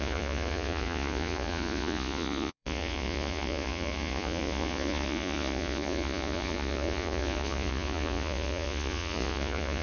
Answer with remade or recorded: remade